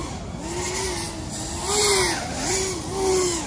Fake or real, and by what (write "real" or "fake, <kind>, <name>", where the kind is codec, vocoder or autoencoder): real